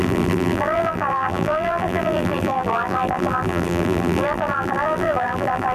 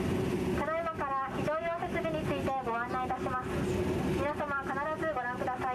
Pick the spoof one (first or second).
first